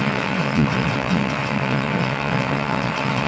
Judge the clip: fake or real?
fake